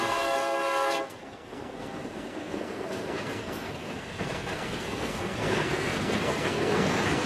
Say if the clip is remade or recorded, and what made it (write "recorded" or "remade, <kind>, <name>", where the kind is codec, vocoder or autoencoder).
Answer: remade, codec, SNAC